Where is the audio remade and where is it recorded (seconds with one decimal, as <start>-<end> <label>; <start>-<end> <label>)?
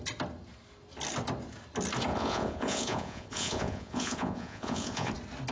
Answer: 0.0-2.1 recorded; 2.1-5.1 remade; 5.1-5.5 recorded